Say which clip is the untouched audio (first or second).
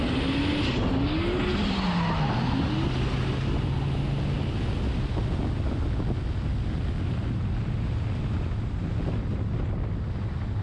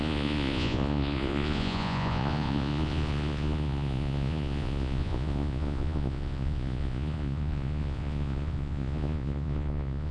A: first